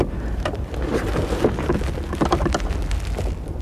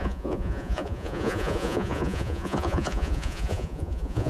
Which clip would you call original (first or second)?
first